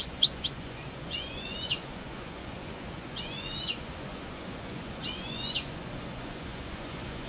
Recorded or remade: remade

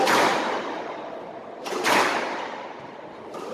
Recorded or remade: remade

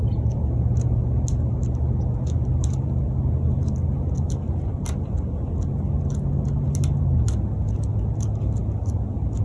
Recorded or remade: recorded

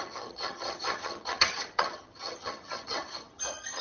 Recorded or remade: remade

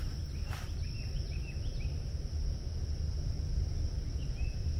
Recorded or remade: recorded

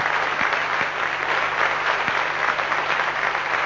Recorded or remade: recorded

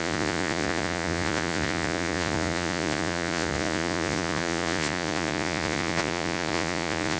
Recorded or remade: remade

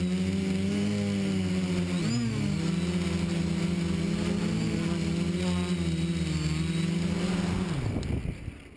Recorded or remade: recorded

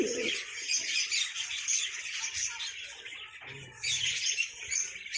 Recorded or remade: recorded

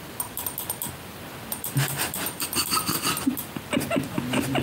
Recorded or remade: recorded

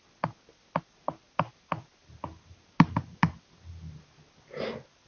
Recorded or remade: recorded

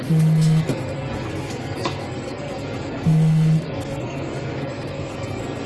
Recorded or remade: remade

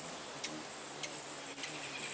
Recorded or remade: recorded